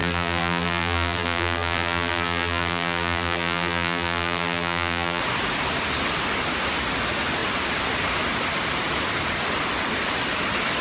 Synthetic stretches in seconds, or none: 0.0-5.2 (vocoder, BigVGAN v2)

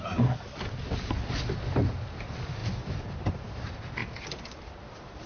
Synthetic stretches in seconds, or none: none

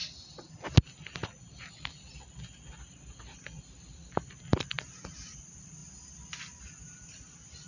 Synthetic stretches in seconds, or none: 4.5-5.3 (vocoder, BigVGAN v2)

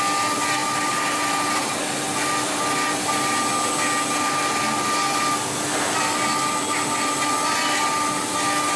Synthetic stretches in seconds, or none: 0.6-1.8 (vocoder, BigVGAN v2)

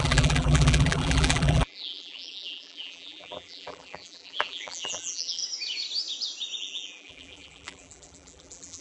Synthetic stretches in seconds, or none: 0.0-5.4 (vocoder, BigVGAN v2); 6.6-8.8